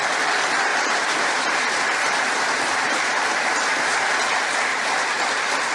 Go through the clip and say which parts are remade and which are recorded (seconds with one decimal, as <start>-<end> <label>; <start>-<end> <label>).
0.0-0.7 recorded; 0.7-4.1 remade; 4.1-4.7 recorded; 4.7-5.7 remade